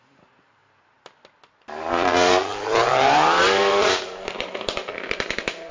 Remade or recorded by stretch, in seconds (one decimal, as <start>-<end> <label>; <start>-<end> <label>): 0.0-0.6 remade; 0.6-1.9 recorded; 1.9-5.7 remade